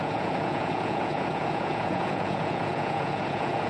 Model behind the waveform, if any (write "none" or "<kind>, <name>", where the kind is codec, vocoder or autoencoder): vocoder, Vocos